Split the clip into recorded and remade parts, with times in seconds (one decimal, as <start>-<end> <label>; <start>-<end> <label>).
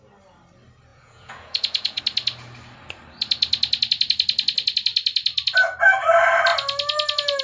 0.0-0.9 recorded; 0.9-2.0 remade; 2.0-7.4 recorded